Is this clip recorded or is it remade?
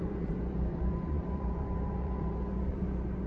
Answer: remade